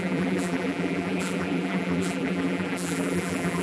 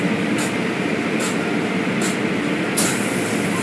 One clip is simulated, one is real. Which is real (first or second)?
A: second